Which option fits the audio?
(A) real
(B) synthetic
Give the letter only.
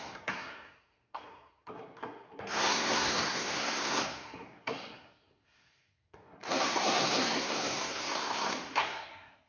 B